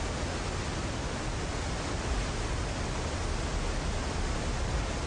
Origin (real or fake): real